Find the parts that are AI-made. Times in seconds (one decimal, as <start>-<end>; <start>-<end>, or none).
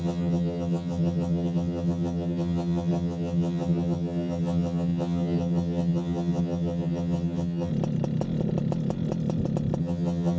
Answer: 0.0-7.7; 9.8-10.4